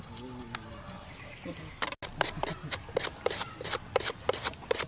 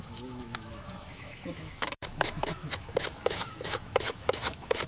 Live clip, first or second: first